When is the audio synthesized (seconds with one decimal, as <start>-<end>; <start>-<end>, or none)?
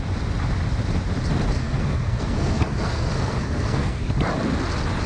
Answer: 1.6-4.0